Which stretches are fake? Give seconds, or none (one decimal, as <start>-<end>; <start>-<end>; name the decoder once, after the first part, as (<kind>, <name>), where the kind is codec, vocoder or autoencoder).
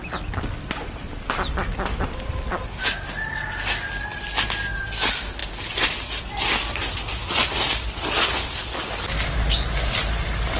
none